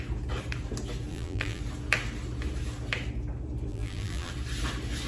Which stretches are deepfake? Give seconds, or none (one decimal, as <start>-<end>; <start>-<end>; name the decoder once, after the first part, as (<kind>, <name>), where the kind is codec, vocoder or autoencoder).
1.1-1.6 (vocoder, BigVGAN v2); 3.7-4.3